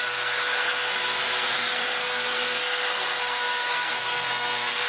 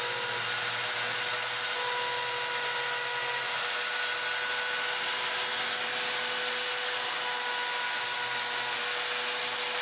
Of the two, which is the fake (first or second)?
first